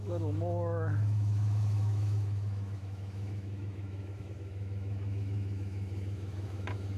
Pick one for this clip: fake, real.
fake